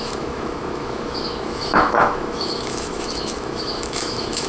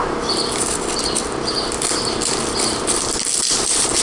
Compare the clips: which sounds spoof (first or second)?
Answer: first